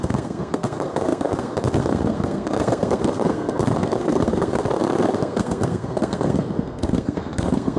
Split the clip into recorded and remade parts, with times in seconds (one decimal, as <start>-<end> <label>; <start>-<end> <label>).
0.0-7.8 remade